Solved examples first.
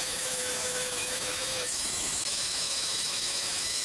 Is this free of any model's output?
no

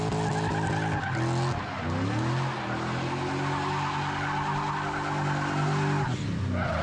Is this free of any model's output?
yes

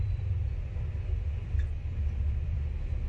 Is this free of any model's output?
no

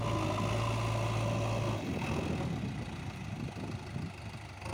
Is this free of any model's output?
yes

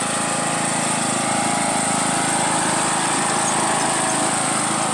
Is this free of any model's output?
yes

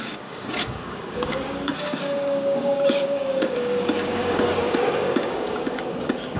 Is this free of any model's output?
no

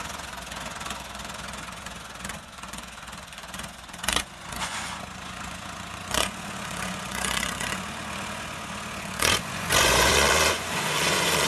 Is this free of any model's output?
no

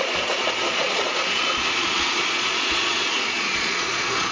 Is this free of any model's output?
no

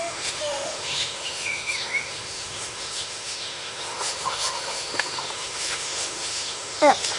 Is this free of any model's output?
no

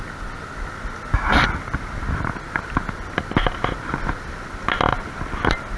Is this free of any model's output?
yes